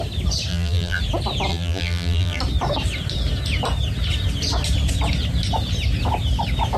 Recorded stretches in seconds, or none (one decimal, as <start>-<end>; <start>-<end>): 0.0-0.5; 1.0-1.5; 2.4-6.8